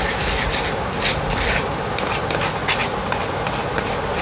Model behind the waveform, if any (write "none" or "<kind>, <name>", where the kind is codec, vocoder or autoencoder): none